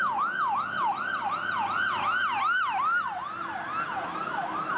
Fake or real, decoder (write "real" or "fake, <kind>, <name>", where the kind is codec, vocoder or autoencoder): real